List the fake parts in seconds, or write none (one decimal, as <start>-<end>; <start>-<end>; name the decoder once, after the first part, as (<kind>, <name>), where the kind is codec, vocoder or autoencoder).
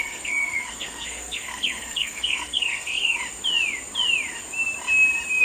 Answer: 0.0-3.2 (codec, SNAC)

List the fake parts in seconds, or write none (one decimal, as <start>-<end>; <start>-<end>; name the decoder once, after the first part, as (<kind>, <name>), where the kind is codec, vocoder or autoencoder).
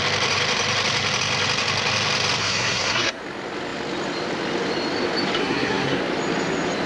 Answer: 2.4-3.2 (codec, SNAC); 5.4-6.0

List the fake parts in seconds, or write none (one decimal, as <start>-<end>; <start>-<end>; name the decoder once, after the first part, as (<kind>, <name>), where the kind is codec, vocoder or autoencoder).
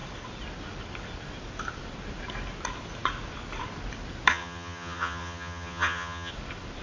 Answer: 4.3-6.3 (vocoder, HiFi-GAN)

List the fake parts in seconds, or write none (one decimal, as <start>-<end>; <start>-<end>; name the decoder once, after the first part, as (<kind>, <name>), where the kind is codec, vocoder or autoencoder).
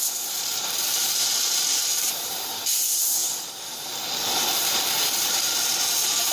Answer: 0.0-3.2 (vocoder, BigVGAN v2); 4.3-6.3